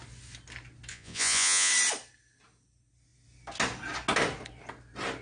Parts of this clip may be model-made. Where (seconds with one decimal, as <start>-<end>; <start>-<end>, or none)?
0.9-1.7